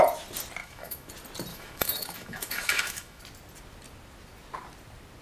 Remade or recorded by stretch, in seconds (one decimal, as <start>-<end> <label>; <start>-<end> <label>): 0.0-0.6 recorded; 0.6-1.1 remade; 1.1-1.5 recorded; 1.5-3.2 remade; 3.2-5.2 recorded